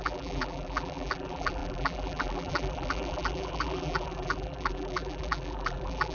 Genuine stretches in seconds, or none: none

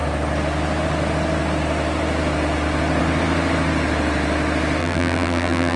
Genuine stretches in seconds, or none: 0.0-4.8

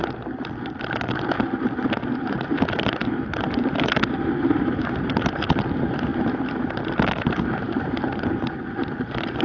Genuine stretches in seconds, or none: 0.0-3.0; 3.6-9.4

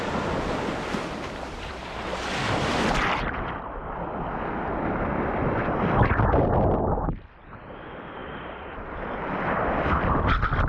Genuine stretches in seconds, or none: 0.0-8.2; 9.0-10.7

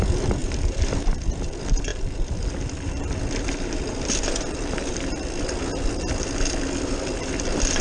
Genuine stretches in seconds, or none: 0.0-0.4; 1.5-1.9; 5.4-7.8